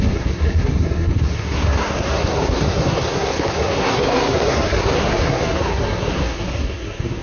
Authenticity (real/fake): fake